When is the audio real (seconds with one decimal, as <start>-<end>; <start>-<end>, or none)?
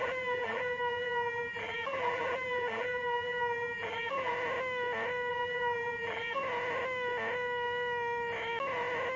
4.3-5.3; 6.4-9.2